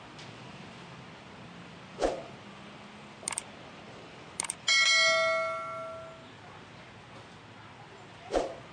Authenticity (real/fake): real